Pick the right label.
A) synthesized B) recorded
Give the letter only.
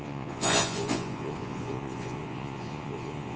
A